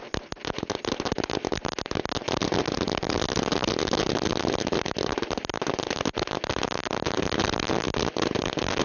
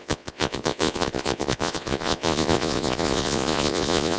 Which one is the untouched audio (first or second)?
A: first